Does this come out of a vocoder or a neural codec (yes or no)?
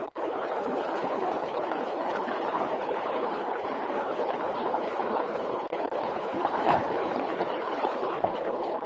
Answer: yes